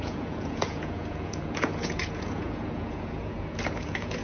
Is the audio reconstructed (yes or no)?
yes